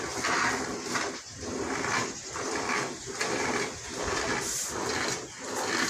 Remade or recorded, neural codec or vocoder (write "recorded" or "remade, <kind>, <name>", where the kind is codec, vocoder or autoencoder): recorded